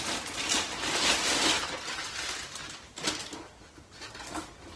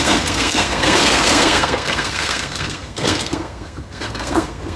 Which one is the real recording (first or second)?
first